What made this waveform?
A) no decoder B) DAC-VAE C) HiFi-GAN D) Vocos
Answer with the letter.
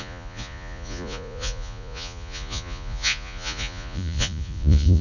D